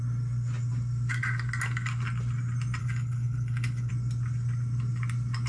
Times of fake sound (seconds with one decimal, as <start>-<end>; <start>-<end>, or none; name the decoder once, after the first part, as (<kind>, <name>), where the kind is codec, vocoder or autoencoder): 2.8-3.9 (codec, HILCodec)